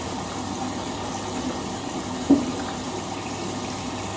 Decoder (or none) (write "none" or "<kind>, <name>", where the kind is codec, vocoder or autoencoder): none